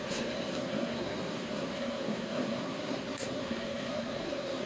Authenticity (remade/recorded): remade